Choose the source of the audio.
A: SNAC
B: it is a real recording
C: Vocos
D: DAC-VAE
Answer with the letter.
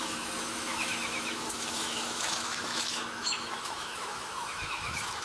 D